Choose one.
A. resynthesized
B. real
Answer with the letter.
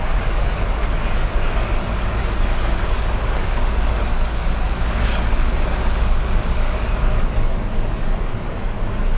A